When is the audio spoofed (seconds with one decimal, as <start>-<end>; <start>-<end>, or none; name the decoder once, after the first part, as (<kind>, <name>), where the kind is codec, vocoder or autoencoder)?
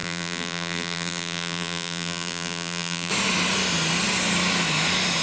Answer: 0.0-3.1 (vocoder, BigVGAN v2)